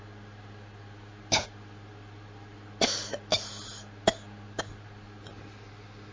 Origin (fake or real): real